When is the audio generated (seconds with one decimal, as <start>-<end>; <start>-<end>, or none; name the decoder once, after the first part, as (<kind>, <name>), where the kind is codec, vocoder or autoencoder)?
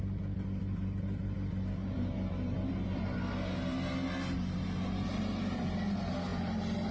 1.8-2.7 (vocoder, BigVGAN v2); 5.1-5.7